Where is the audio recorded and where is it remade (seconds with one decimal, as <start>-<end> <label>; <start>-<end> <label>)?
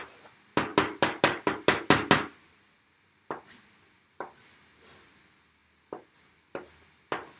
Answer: 0.0-7.4 recorded